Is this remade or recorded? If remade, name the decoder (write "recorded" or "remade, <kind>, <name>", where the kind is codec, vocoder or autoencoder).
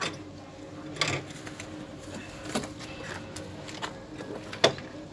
recorded